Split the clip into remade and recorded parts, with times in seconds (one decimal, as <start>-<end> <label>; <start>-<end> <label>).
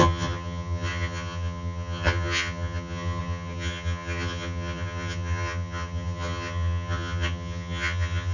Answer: 0.0-8.3 remade